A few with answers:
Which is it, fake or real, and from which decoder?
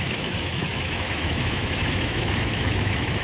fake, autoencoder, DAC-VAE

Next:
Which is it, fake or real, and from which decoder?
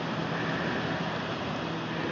real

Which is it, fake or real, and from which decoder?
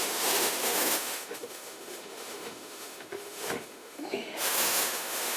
fake, autoencoder, DAC-VAE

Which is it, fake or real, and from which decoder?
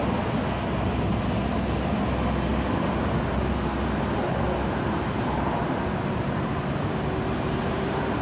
real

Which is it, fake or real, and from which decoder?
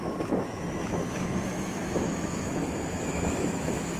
fake, autoencoder, DAC-VAE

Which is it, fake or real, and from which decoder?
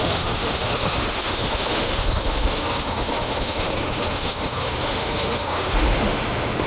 fake, autoencoder, DAC-VAE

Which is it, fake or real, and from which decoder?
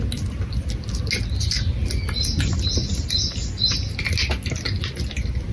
real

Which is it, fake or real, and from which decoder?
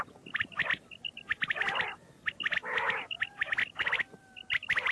real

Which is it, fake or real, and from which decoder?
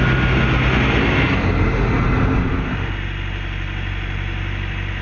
real